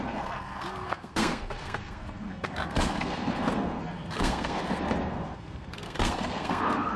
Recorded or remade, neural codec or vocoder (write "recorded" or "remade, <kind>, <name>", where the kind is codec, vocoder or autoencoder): remade, codec, SNAC